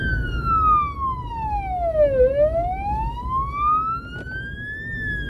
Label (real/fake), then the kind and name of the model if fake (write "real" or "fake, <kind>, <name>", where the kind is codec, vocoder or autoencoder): real